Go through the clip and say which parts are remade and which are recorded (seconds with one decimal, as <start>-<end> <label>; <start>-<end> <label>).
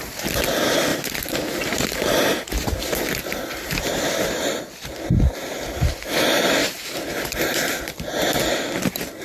0.0-0.9 recorded; 0.9-4.6 remade; 4.6-6.6 recorded; 6.6-7.8 remade; 7.8-9.2 recorded